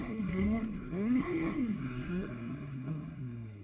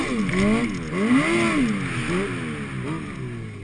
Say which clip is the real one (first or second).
second